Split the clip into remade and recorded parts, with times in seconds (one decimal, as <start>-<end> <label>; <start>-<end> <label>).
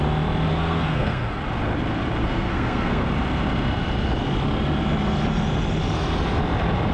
0.0-0.5 recorded; 0.5-1.4 remade; 1.4-2.2 recorded; 2.2-3.1 remade; 3.1-6.9 recorded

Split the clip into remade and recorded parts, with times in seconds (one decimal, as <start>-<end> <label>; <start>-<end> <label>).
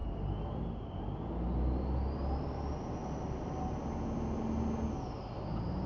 0.0-0.6 remade; 0.6-3.0 recorded; 3.0-3.9 remade; 3.9-5.9 recorded